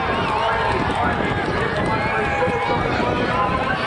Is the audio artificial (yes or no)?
no